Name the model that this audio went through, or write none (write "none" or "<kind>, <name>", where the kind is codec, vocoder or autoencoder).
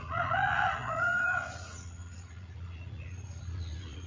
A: vocoder, Vocos